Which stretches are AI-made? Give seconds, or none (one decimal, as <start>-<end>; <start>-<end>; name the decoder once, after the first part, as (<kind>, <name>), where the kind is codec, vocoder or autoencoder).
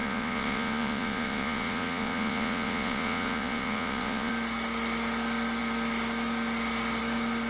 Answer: 0.0-4.3 (vocoder, Vocos)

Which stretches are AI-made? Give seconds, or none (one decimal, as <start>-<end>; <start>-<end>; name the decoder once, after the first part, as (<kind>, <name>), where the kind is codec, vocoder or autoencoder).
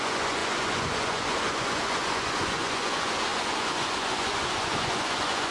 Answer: 0.0-5.5 (vocoder, Vocos)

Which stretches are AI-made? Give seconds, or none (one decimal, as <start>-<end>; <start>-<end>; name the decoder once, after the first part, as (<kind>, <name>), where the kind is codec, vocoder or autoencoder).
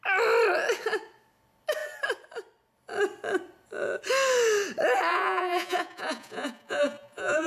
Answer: 5.1-7.5 (vocoder, Vocos)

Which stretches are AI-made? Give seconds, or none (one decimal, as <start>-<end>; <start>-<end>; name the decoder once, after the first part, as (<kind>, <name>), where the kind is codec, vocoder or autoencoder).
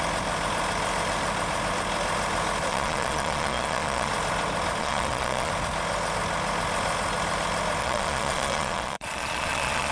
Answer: 2.7-4.1 (vocoder, Vocos); 4.8-5.5; 7.8-9.9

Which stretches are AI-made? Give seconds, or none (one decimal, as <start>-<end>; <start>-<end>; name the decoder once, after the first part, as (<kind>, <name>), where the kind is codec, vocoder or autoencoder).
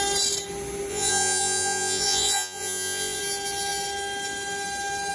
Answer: 0.9-3.2 (vocoder, Vocos)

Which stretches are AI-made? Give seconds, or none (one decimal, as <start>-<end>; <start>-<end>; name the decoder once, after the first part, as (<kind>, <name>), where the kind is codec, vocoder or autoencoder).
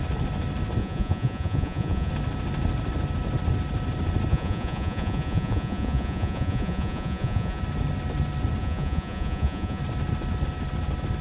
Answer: 0.8-2.1 (vocoder, Vocos); 4.3-7.6; 8.6-9.8